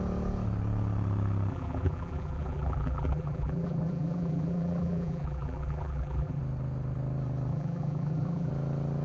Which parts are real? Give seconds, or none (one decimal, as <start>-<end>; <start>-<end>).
0.0-1.5; 6.4-7.5; 8.5-9.0